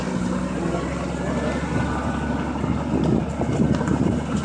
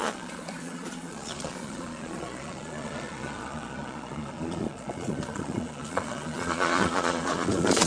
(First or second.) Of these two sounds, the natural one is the first